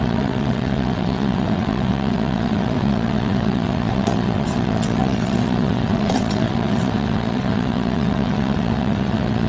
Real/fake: fake